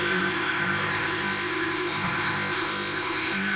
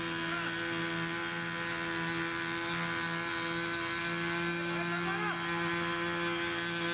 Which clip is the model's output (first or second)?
first